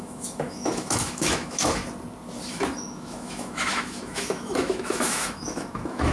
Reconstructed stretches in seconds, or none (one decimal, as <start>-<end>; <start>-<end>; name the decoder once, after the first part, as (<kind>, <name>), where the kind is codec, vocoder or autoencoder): 0.0-1.8 (autoencoder, DAC-VAE); 2.5-6.1